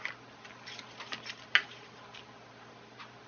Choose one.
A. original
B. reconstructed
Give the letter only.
A